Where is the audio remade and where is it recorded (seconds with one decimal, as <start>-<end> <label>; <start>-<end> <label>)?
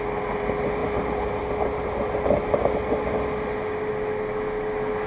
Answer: 0.0-5.1 recorded